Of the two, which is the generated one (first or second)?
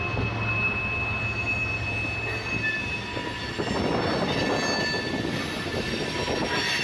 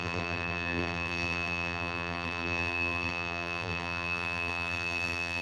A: second